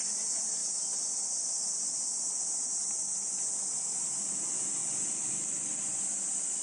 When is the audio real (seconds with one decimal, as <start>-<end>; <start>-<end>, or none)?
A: 0.0-4.8; 5.3-5.9